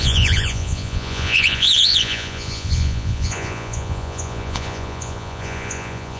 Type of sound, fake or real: fake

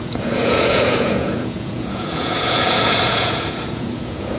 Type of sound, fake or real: fake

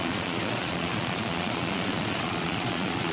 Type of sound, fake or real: fake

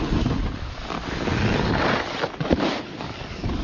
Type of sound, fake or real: real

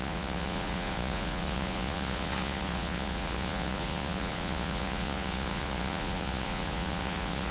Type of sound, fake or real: fake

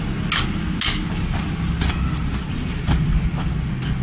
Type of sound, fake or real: real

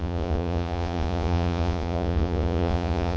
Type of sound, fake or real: fake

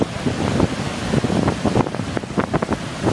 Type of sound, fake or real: real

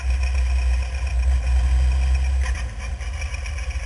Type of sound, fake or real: real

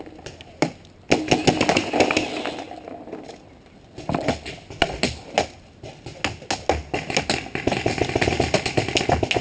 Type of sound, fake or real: real